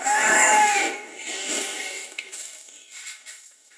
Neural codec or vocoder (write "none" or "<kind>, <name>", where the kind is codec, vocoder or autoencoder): codec, DAC